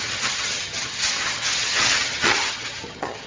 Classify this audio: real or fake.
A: fake